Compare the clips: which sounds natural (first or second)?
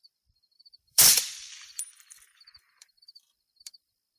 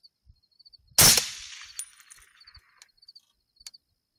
second